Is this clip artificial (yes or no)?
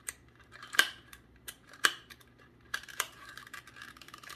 yes